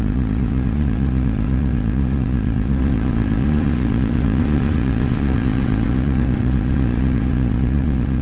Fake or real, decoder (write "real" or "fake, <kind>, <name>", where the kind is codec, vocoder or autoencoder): fake, vocoder, Vocos